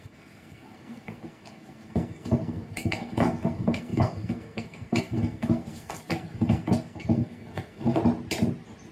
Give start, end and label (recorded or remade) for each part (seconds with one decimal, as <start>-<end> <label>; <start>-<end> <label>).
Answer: 0.0-8.0 remade; 8.0-8.9 recorded